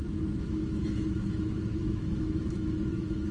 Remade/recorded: remade